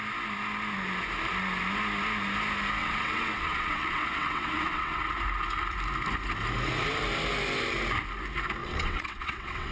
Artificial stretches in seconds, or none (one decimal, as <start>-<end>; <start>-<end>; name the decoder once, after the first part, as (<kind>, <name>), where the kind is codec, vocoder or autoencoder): 2.8-5.0 (vocoder, WaveNeXt); 8.6-9.7